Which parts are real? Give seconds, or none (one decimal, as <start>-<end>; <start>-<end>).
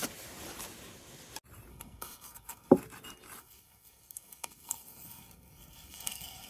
0.0-1.7; 2.7-3.4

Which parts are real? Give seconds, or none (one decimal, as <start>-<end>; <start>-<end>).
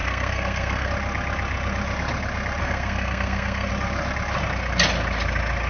0.9-2.6; 3.7-5.7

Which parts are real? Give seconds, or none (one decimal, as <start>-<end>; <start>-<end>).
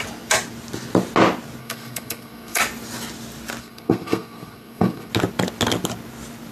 0.0-1.6; 2.6-3.6; 5.1-6.5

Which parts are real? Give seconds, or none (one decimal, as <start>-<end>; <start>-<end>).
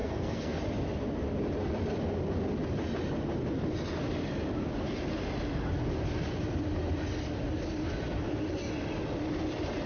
0.6-9.9